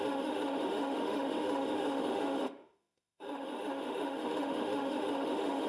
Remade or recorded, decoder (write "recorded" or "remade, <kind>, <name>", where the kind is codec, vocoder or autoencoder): remade, autoencoder, DAC-VAE